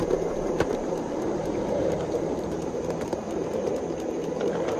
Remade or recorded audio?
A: remade